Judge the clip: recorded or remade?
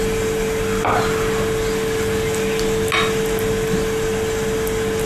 recorded